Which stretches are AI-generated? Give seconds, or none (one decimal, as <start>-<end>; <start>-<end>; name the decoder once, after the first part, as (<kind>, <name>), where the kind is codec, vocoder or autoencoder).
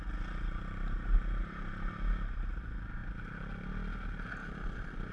1.4-1.9 (vocoder, BigVGAN v2); 4.4-5.1